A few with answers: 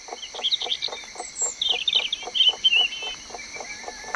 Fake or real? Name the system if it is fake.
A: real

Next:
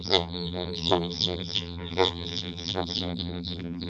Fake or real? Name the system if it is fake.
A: fake, vocoder, BigVGAN v2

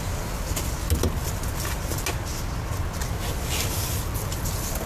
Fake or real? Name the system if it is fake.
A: real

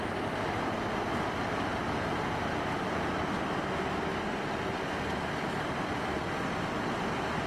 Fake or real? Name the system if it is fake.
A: real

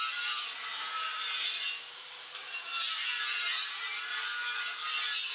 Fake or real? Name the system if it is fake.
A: fake, vocoder, BigVGAN v2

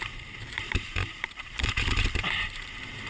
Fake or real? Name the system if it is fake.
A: fake, vocoder, BigVGAN v2